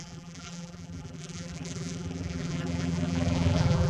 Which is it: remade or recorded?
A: remade